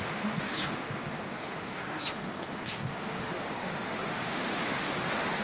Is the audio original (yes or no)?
no